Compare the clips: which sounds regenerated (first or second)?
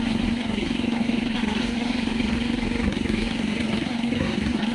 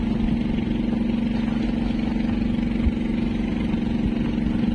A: first